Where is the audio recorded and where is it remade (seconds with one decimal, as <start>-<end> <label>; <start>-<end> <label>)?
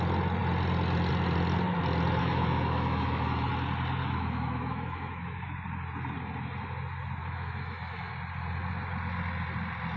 0.0-2.2 recorded; 2.2-3.5 remade; 3.5-4.0 recorded; 4.0-5.5 remade; 5.5-7.2 recorded; 7.2-8.1 remade; 8.1-10.0 recorded